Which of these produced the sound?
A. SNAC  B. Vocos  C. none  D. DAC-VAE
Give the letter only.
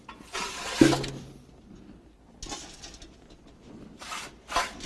C